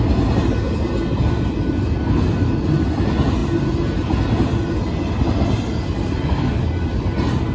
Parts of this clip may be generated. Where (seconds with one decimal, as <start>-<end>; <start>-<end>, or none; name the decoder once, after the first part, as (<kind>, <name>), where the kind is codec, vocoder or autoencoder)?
none

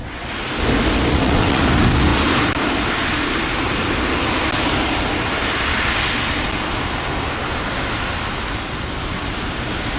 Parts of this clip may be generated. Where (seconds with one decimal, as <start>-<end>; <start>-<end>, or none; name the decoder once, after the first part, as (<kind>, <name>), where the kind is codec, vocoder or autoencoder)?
1.1-1.6 (vocoder, WaveNeXt)

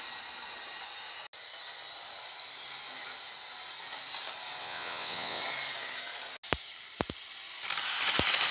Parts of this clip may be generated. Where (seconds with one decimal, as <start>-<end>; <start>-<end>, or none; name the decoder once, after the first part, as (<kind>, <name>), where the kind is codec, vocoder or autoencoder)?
4.6-5.4 (vocoder, WaveNeXt)

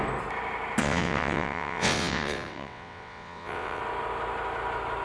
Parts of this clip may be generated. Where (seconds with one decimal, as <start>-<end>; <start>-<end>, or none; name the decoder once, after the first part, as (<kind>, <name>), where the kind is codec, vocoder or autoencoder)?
0.8-3.8 (vocoder, WaveNeXt)

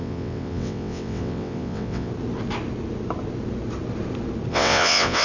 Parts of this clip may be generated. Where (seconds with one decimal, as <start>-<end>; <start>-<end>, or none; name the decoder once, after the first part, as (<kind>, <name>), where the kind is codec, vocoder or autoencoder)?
0.0-2.1 (vocoder, WaveNeXt); 4.5-5.2

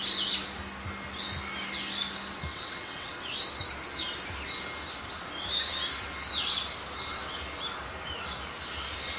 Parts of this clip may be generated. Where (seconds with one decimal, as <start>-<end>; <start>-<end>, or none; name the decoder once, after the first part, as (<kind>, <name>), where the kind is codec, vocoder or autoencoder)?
2.5-3.2 (vocoder, WaveNeXt)

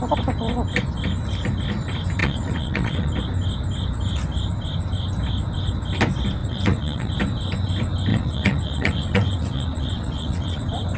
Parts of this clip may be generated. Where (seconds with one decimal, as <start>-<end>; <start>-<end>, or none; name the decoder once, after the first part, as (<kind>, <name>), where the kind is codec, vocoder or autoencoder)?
2.2-3.1 (vocoder, WaveNeXt); 6.4-7.1; 8.1-10.6

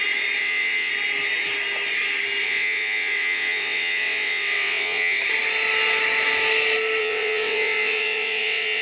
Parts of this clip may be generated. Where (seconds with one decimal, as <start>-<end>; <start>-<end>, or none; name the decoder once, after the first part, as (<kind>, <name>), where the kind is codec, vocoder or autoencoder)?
0.4-0.9 (vocoder, WaveNeXt); 2.4-5.2; 7.0-8.8